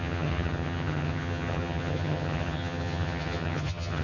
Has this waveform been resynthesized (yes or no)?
yes